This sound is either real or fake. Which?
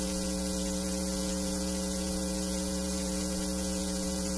fake